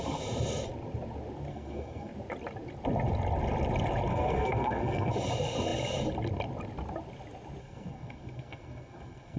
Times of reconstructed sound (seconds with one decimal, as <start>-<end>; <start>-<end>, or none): 1.5-2.1; 4.1-5.1; 7.6-9.4